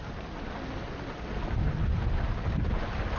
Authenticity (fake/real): real